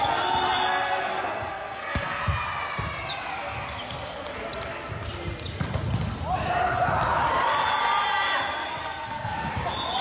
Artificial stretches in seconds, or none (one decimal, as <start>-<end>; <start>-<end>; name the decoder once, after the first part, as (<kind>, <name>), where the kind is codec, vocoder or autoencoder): 1.1-2.2 (codec, SNAC); 8.8-9.5